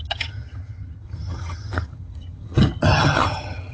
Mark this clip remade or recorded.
remade